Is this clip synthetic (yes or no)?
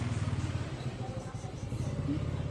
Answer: no